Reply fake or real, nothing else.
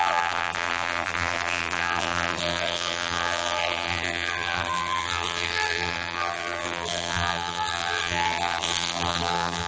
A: fake